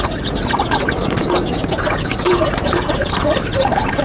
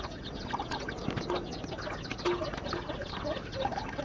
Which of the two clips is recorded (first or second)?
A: second